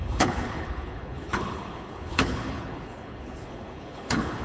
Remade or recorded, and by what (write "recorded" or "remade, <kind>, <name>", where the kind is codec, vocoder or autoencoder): remade, codec, HILCodec